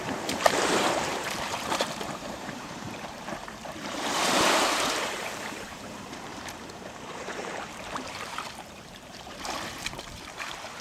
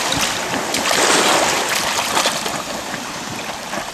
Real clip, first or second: second